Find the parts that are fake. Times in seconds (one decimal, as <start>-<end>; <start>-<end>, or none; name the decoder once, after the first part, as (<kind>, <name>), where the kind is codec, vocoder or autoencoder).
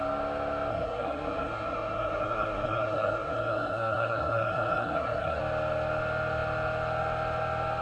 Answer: 0.7-5.4 (codec, SNAC)